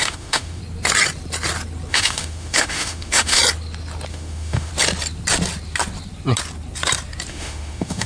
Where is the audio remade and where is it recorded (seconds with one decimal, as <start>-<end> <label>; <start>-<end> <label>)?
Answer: 0.0-0.6 remade; 0.6-1.9 recorded; 1.9-3.4 remade; 3.4-4.1 recorded; 4.1-4.7 remade; 4.7-7.3 recorded; 7.3-8.1 remade

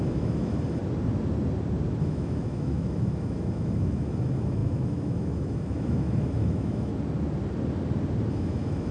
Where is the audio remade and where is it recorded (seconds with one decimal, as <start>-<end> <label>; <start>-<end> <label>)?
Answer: 0.0-0.8 remade; 0.8-2.0 recorded; 2.0-6.9 remade; 6.9-8.3 recorded; 8.3-8.9 remade

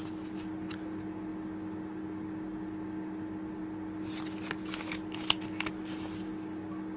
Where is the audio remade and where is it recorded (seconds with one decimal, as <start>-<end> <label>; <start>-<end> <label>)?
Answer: 0.0-7.0 recorded

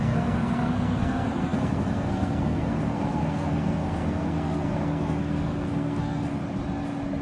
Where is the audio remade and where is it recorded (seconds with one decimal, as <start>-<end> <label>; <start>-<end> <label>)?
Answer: 0.0-6.3 remade; 6.3-7.2 recorded

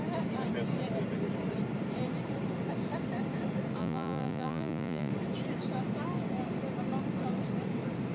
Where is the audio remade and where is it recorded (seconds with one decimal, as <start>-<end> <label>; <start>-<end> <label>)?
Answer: 0.0-3.8 recorded; 3.8-5.1 remade; 5.1-8.1 recorded

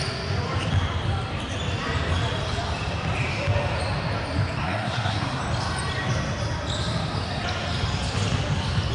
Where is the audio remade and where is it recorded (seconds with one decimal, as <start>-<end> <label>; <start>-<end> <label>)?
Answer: 0.0-4.6 recorded; 4.6-5.4 remade; 5.4-8.9 recorded

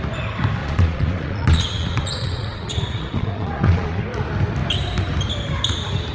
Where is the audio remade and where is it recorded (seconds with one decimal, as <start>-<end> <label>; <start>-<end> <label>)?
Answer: 0.0-0.6 recorded; 0.6-4.0 remade; 4.0-6.1 recorded